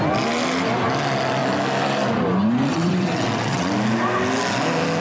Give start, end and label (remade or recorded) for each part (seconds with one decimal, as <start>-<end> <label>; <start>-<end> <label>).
0.0-2.7 recorded; 2.7-3.7 remade; 3.7-5.0 recorded